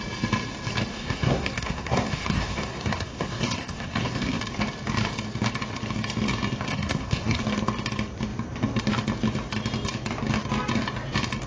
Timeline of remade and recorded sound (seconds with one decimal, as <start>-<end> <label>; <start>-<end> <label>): 0.0-0.9 recorded; 0.9-4.4 remade; 4.4-6.7 recorded; 6.7-7.4 remade; 7.4-11.5 recorded